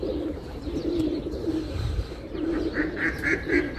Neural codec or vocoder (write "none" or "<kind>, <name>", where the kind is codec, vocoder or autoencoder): vocoder, BigVGAN v2